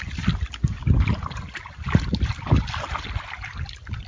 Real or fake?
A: fake